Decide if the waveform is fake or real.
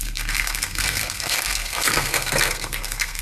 fake